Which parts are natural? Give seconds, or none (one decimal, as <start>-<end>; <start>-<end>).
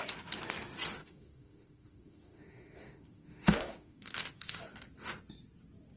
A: 0.0-1.0; 4.6-6.0